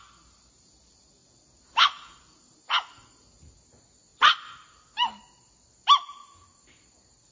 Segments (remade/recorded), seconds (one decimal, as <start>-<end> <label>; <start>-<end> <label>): 0.0-7.3 recorded